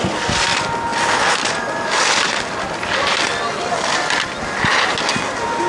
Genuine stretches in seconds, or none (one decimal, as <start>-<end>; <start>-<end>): 0.0-5.7